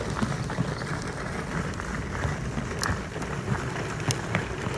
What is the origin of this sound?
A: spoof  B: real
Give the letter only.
B